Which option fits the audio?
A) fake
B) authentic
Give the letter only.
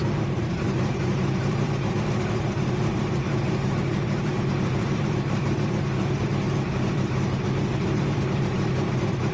A